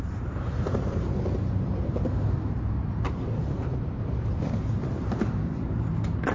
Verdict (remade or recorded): remade